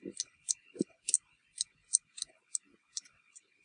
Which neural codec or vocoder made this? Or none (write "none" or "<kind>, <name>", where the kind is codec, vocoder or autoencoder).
none